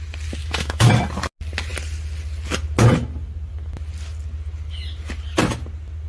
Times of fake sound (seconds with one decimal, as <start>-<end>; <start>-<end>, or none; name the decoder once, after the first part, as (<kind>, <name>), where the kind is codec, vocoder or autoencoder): 0.4-0.9 (autoencoder, DAC-VAE)